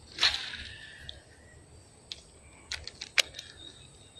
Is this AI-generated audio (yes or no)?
no